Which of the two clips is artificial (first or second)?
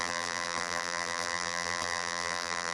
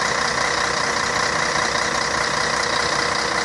first